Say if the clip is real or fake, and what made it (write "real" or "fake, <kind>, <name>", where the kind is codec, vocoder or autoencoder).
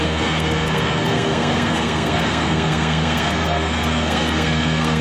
fake, codec, SNAC